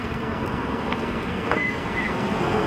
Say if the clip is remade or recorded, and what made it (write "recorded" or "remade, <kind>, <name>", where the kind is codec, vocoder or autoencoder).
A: remade, codec, SNAC